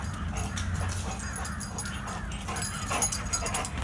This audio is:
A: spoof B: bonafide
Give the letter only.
B